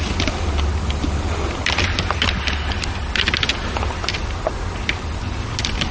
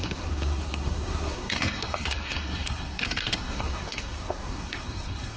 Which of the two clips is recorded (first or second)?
first